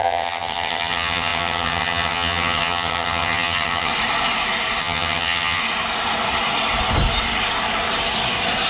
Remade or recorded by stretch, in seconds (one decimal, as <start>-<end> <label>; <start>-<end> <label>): 0.0-3.9 remade; 3.9-4.8 recorded; 4.8-5.6 remade; 5.6-8.7 recorded